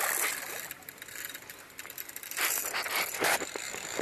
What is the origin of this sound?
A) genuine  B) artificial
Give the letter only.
A